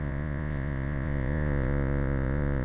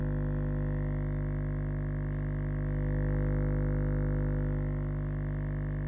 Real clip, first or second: second